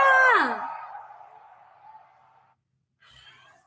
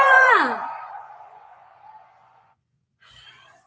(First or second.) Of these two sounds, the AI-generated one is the second